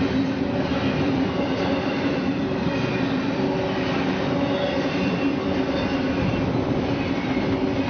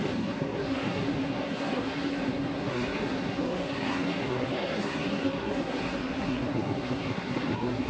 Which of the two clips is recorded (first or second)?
first